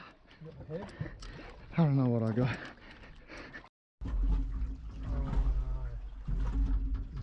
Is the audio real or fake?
real